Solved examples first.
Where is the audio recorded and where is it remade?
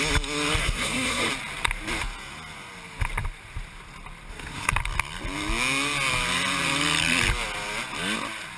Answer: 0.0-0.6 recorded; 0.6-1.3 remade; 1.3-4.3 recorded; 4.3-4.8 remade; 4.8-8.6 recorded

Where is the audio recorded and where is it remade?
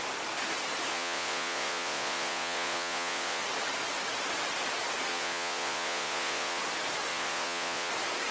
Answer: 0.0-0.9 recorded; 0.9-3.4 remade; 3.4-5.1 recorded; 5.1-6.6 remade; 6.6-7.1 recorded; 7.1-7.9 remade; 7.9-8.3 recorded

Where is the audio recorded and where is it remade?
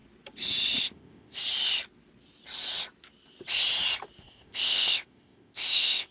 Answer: 0.0-0.8 recorded; 0.8-1.4 remade; 1.4-4.2 recorded; 4.2-6.1 remade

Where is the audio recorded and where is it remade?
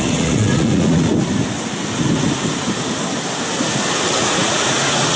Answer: 0.0-1.1 remade; 1.1-4.2 recorded; 4.2-5.2 remade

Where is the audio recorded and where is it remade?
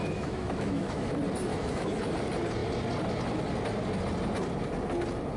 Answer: 0.0-1.1 remade; 1.1-1.5 recorded; 1.5-2.0 remade; 2.0-5.4 recorded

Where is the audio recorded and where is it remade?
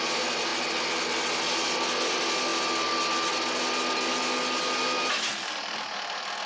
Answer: 0.0-6.5 recorded